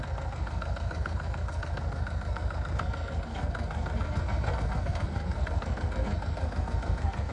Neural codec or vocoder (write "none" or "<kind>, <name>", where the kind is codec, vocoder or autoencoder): codec, SNAC